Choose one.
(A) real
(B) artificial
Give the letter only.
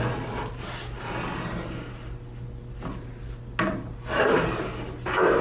A